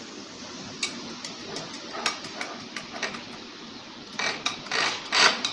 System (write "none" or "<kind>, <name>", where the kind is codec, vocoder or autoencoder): none